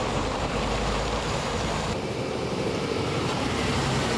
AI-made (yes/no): yes